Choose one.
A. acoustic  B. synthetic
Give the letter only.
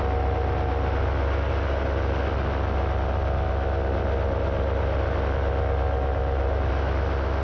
A